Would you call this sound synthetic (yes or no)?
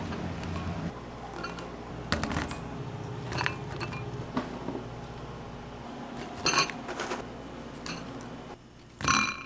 no